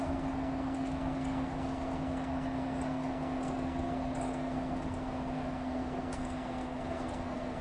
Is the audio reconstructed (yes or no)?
yes